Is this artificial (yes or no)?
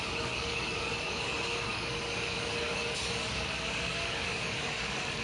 yes